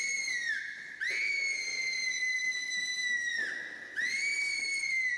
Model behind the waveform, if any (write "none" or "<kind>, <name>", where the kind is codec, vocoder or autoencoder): none